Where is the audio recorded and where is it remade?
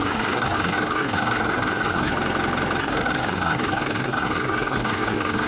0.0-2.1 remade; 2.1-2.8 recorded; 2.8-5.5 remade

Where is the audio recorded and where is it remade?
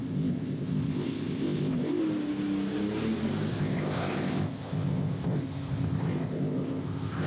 0.0-2.0 remade; 2.0-3.5 recorded; 3.5-7.3 remade